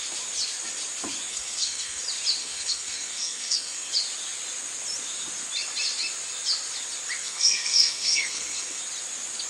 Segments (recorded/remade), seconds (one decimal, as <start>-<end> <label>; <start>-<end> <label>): 0.0-1.3 recorded; 1.3-2.0 remade; 2.0-2.4 recorded; 2.4-3.9 remade; 3.9-7.2 recorded; 7.2-8.8 remade; 8.8-9.5 recorded